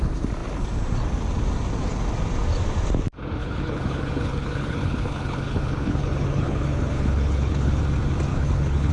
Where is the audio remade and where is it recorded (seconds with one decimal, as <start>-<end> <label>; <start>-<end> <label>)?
0.0-3.4 recorded; 3.4-7.8 remade; 7.8-8.3 recorded; 8.3-8.9 remade